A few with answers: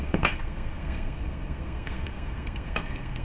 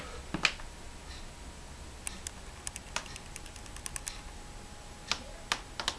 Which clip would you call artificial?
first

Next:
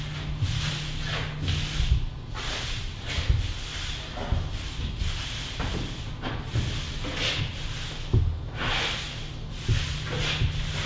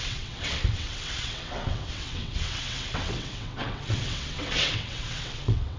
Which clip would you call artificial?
second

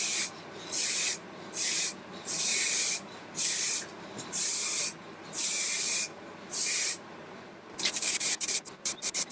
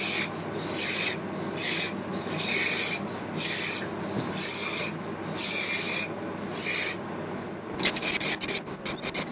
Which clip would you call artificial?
first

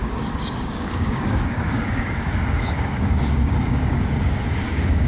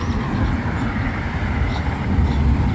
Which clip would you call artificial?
first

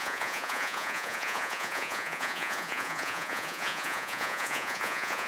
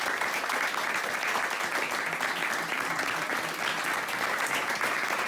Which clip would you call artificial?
first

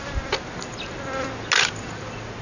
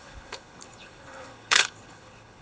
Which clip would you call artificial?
second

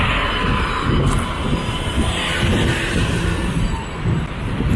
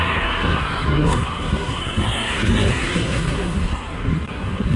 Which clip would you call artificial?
second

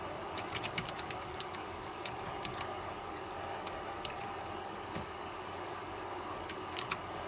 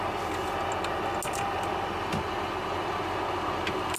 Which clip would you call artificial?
first